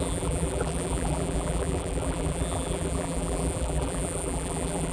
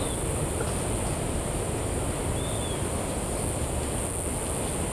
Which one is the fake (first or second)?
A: first